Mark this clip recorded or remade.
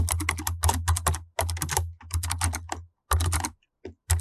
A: recorded